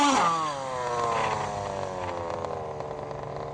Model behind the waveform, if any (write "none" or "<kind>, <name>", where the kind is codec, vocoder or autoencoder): none